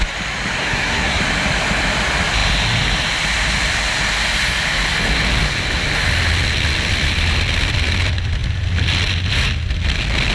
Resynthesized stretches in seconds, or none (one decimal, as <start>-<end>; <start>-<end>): 0.6-1.2